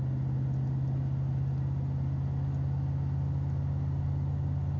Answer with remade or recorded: recorded